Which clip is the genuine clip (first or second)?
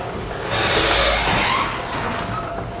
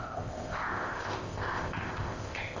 first